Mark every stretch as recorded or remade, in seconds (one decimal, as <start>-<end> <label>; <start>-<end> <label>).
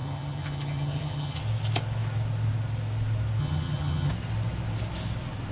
0.0-1.4 remade; 1.4-3.4 recorded; 3.4-4.1 remade; 4.1-5.5 recorded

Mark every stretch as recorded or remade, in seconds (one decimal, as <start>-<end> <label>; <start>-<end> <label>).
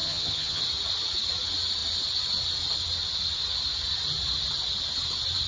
0.0-0.6 remade; 0.6-5.5 recorded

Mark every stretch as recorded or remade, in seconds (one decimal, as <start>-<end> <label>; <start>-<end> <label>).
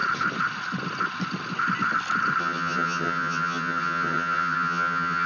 0.0-2.4 recorded; 2.4-5.3 remade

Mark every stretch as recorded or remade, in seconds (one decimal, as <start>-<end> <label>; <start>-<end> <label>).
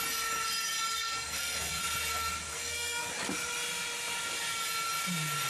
0.0-0.9 recorded; 0.9-1.8 remade; 1.8-2.5 recorded; 2.5-3.1 remade; 3.1-5.5 recorded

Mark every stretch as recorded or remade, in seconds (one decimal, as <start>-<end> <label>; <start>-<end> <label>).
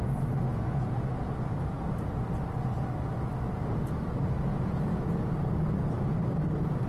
0.0-0.5 recorded; 0.5-1.1 remade; 1.1-4.5 recorded; 4.5-5.3 remade; 5.3-6.9 recorded